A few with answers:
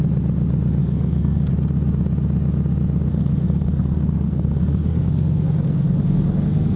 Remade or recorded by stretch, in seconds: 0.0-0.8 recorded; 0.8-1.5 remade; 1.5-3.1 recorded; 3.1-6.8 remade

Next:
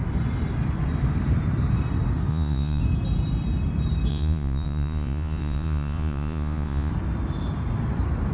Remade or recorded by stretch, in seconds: 0.0-2.3 recorded; 2.3-2.8 remade; 2.8-4.1 recorded; 4.1-6.9 remade; 6.9-8.3 recorded

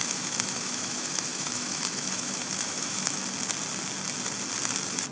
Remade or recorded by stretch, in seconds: 0.0-3.2 remade; 3.2-5.1 recorded

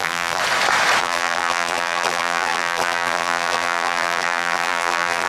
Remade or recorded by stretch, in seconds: 0.0-0.4 remade; 0.4-1.0 recorded; 1.0-5.3 remade

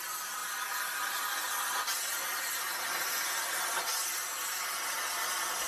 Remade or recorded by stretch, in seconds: 0.0-5.7 recorded

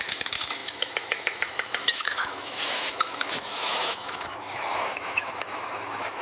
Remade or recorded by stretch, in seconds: 0.0-6.2 remade